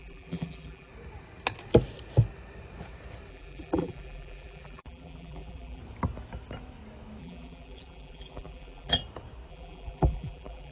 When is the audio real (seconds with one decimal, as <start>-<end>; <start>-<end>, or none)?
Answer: 0.9-3.3; 5.8-7.2; 9.0-9.5